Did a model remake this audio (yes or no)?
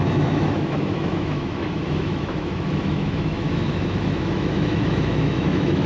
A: yes